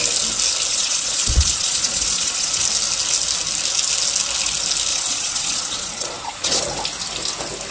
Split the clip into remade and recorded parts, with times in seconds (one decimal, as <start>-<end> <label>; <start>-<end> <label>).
0.0-0.7 recorded; 0.7-2.6 remade; 2.6-4.9 recorded; 4.9-6.6 remade; 6.6-7.7 recorded